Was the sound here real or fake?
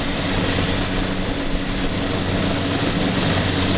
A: real